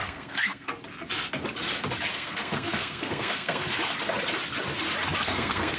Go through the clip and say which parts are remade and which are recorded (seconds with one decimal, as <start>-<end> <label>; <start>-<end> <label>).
0.0-0.7 remade; 0.7-2.1 recorded; 2.1-3.7 remade; 3.7-5.2 recorded; 5.2-5.8 remade